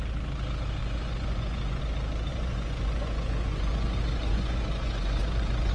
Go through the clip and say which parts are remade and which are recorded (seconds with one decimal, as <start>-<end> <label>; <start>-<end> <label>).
0.0-0.8 recorded; 0.8-1.8 remade; 1.8-2.3 recorded; 2.3-5.7 remade